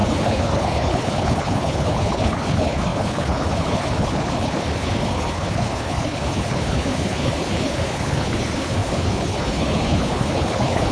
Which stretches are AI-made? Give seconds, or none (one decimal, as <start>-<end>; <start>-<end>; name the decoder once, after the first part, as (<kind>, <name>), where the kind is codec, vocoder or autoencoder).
0.0-10.9 (codec, HILCodec)